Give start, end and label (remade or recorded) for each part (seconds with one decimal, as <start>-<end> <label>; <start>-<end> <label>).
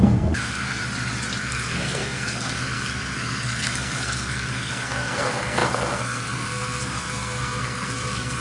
0.0-0.8 remade; 0.8-1.4 recorded; 1.4-8.4 remade